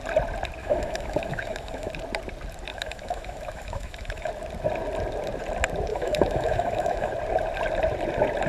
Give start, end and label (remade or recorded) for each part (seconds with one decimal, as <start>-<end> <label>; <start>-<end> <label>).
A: 0.0-0.6 recorded; 0.6-1.9 remade; 1.9-2.7 recorded; 2.7-4.3 remade; 4.3-5.9 recorded; 5.9-7.1 remade; 7.1-8.5 recorded